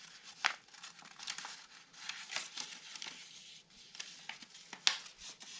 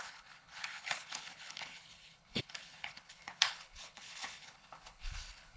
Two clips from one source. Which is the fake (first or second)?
second